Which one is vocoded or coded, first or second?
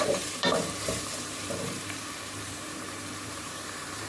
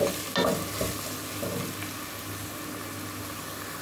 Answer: first